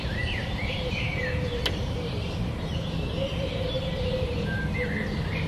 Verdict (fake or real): fake